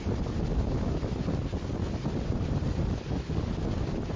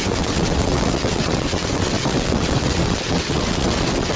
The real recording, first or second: first